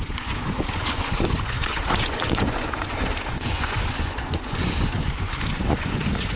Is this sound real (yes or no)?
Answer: no